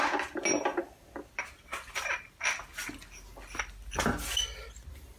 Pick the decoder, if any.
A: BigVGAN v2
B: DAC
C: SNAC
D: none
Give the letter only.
D